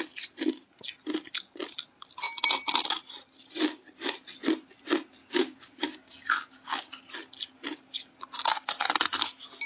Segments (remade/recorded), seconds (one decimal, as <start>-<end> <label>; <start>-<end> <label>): 0.0-5.2 recorded; 5.2-7.1 remade; 7.1-9.7 recorded